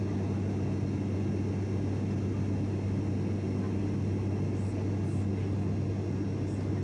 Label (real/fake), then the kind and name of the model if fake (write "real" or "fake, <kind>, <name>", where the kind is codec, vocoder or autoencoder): real